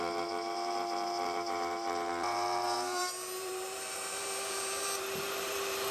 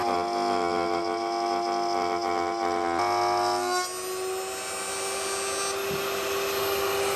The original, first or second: second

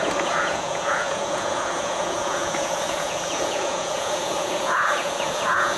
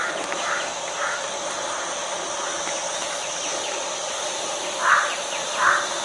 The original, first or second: second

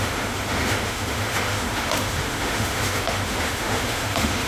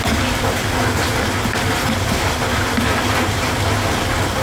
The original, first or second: second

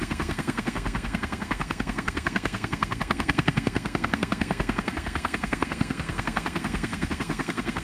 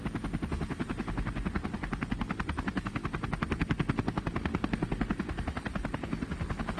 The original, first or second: second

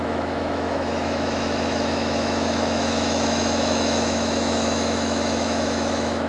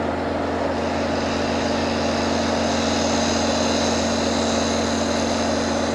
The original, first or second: second